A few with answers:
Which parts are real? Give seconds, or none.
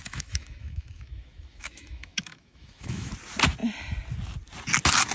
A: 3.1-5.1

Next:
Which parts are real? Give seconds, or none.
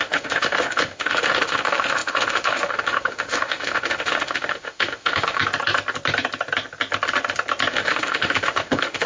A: 5.4-7.7